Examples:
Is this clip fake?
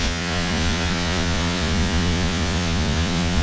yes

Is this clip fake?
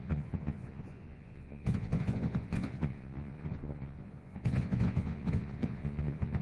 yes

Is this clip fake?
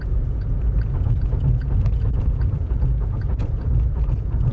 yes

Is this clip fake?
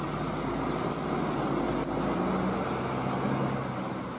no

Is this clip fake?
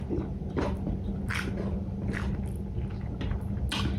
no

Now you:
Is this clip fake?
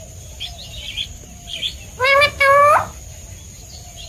no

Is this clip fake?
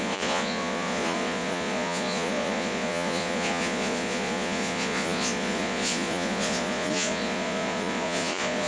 yes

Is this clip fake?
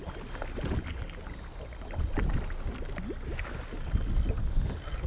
no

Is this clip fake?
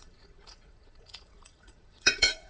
yes